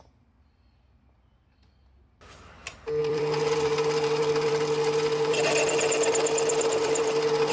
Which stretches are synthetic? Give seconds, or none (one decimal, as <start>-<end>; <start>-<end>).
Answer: 3.0-7.5